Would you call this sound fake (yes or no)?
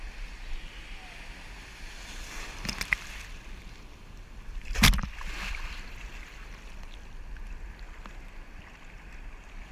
no